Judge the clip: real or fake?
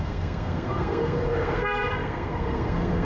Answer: fake